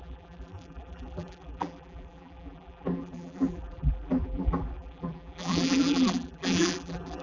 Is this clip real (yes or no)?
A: no